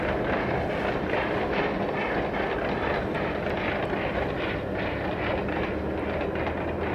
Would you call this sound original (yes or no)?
yes